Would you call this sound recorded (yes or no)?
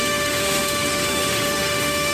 no